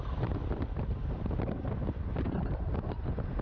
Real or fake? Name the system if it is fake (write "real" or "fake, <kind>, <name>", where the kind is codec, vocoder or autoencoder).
fake, vocoder, BigVGAN v2